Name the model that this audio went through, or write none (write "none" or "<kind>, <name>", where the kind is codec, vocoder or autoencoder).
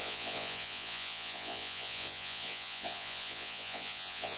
vocoder, Vocos